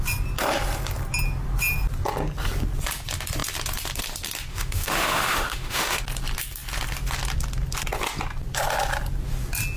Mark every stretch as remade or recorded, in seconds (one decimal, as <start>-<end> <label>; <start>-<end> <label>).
0.0-4.5 recorded; 4.5-6.0 remade; 6.0-9.8 recorded